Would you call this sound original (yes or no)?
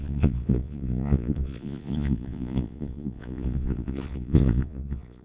no